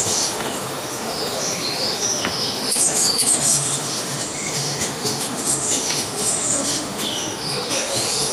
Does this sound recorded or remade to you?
remade